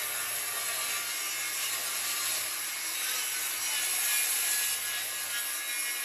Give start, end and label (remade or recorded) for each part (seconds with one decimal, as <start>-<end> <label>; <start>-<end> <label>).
0.0-1.8 recorded; 1.8-3.4 remade; 3.4-6.0 recorded